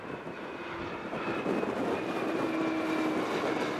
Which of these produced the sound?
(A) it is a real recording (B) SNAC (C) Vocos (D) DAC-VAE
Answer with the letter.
A